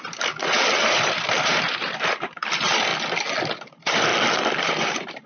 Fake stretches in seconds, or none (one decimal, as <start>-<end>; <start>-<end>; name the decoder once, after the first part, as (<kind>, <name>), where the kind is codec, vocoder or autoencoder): 0.0-2.9 (vocoder, BigVGAN v2); 3.5-4.1; 4.6-5.3